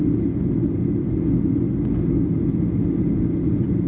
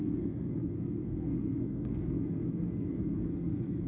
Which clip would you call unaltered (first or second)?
first